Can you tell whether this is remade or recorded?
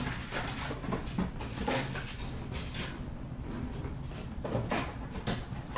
recorded